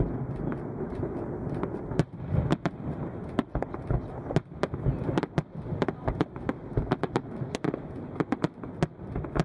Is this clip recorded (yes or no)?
yes